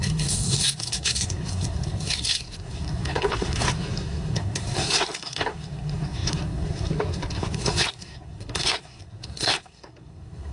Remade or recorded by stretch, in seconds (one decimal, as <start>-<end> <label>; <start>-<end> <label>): 0.0-10.5 remade